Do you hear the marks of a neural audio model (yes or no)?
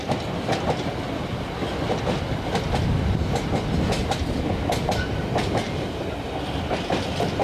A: no